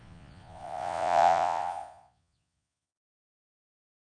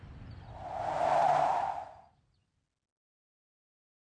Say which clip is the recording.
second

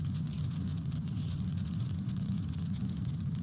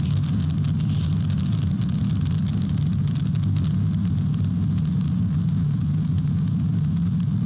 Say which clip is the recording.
second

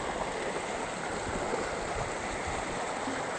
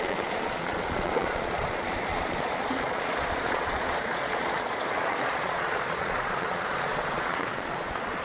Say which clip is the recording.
first